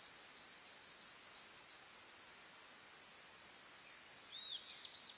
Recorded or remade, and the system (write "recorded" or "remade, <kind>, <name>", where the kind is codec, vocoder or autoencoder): recorded